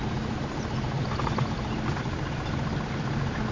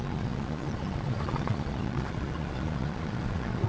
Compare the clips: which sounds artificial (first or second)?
second